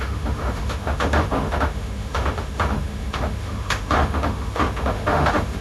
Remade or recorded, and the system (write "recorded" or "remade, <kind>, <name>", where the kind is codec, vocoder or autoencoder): remade, autoencoder, DAC-VAE